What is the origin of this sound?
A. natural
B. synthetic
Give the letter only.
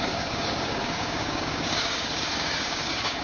B